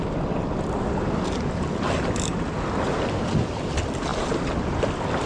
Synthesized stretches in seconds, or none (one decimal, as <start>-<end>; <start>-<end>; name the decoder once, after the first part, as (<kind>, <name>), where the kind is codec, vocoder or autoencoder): none